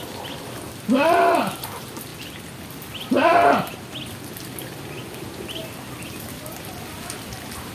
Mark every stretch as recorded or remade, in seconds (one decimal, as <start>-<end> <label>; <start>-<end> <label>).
0.0-7.7 recorded